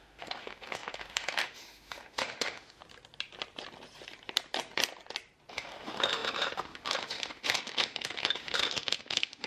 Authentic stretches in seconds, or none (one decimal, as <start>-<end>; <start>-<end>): 2.8-5.5